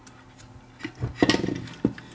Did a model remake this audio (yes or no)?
no